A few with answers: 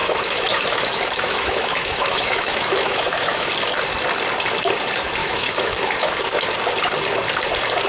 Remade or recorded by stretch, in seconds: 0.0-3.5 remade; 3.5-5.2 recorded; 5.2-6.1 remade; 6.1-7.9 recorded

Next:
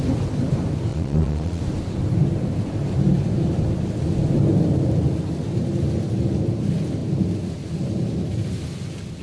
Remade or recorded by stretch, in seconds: 0.0-0.9 recorded; 0.9-1.6 remade; 1.6-9.2 recorded